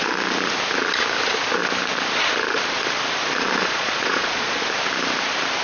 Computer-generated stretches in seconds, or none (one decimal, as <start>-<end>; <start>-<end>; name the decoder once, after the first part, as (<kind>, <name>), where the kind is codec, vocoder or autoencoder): 3.6-4.6 (vocoder, Vocos)